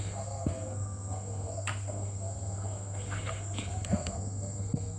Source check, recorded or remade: remade